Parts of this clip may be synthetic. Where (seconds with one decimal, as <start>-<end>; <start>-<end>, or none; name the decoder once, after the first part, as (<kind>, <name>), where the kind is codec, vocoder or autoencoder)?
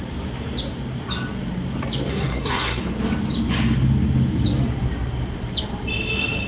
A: 2.1-2.8 (codec, SNAC)